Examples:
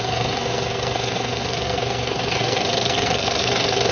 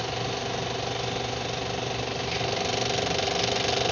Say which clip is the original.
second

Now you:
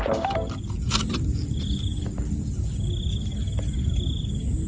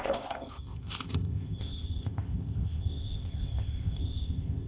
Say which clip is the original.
first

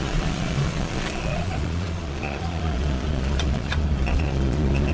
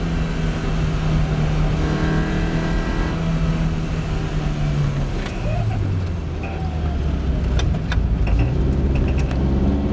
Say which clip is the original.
second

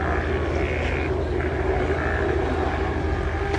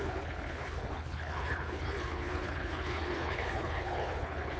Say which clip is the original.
first